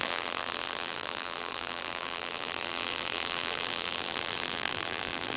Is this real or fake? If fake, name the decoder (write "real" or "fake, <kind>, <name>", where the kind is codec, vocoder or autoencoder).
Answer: fake, vocoder, BigVGAN v2